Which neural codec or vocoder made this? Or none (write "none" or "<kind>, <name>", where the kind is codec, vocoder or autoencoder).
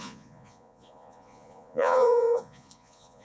vocoder, Vocos